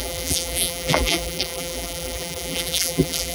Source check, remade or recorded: remade